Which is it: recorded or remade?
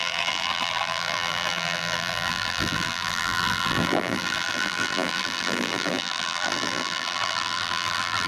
remade